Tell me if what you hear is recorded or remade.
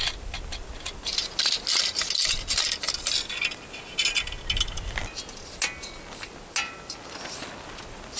recorded